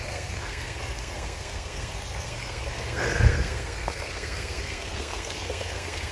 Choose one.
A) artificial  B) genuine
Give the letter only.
A